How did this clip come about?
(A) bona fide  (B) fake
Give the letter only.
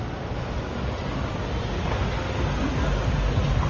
A